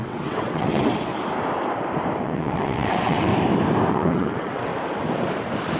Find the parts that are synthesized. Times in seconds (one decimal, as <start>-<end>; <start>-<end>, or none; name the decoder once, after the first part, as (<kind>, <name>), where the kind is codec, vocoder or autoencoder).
0.0-1.1 (vocoder, WaveNeXt); 2.2-3.3; 3.9-4.7